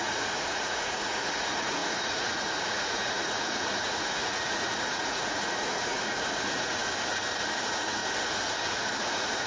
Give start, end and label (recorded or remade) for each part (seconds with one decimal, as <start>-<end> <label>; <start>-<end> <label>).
0.0-6.8 remade; 6.8-7.6 recorded; 7.6-8.0 remade; 8.0-8.7 recorded; 8.7-9.5 remade